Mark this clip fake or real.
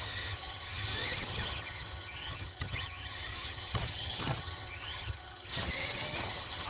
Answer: fake